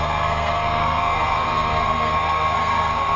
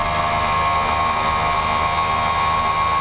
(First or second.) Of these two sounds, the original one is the second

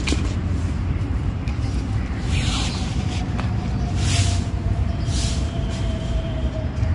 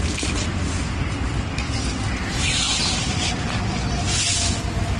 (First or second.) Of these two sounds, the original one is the second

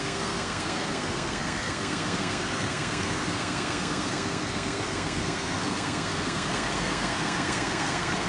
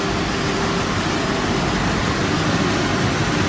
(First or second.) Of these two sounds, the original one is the second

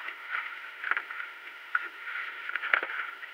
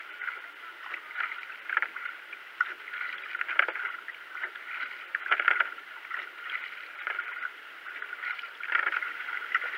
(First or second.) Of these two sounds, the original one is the second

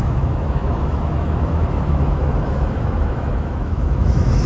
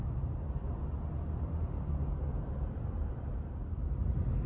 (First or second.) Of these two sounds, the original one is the second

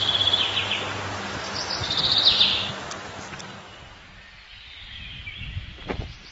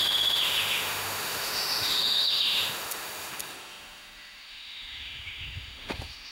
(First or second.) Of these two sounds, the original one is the first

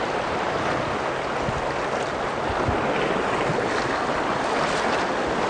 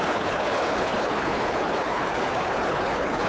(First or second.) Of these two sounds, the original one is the first